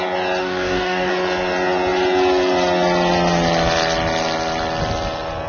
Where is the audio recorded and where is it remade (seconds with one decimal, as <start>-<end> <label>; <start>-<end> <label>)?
0.0-0.4 recorded; 0.4-1.1 remade; 1.1-5.5 recorded